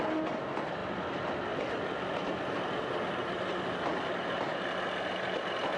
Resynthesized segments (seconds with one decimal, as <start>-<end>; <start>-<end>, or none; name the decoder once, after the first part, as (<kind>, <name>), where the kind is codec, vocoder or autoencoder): none